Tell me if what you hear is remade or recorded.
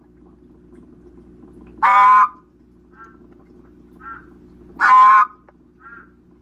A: recorded